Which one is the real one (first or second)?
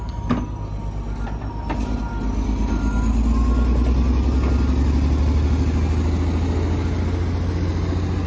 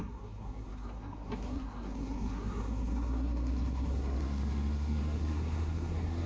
first